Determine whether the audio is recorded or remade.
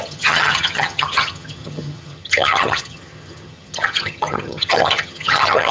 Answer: remade